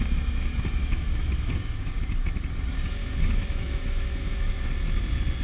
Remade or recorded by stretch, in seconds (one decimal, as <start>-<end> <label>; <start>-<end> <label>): 0.0-0.8 recorded; 0.8-2.4 remade; 2.4-3.0 recorded; 3.0-4.5 remade; 4.5-5.4 recorded